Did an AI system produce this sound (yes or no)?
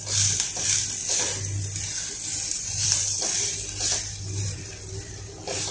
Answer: yes